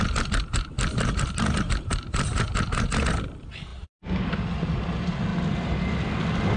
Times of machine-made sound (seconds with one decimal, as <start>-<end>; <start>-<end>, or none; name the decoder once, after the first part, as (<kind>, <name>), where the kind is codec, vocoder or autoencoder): none

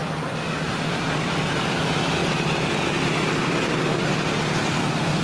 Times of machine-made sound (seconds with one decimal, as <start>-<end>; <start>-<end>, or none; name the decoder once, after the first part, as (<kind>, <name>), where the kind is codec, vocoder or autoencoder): none

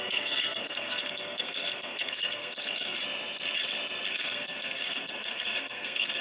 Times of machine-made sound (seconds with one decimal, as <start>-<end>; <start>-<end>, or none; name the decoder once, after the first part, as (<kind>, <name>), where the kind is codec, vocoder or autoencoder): 0.0-3.0 (codec, SNAC); 4.1-6.2